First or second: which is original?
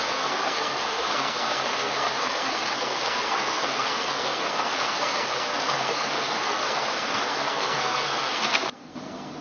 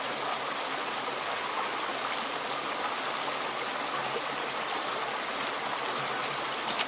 second